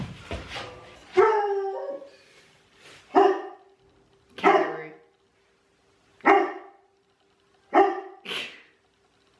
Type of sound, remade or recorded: recorded